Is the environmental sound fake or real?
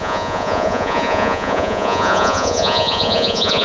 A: fake